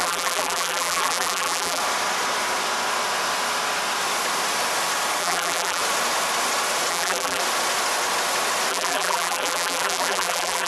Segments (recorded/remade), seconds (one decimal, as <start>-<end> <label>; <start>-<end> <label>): 0.0-1.8 remade; 1.8-5.2 recorded; 5.2-5.8 remade; 5.8-6.9 recorded; 6.9-7.4 remade; 7.4-8.7 recorded; 8.7-10.7 remade